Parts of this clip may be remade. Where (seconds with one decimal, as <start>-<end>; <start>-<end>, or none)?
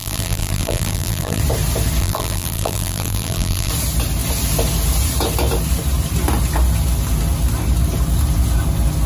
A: 0.0-1.4; 2.0-3.7